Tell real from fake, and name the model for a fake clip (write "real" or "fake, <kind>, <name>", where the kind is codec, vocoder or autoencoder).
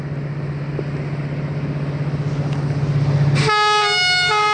real